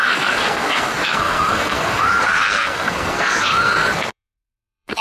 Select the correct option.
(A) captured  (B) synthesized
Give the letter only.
B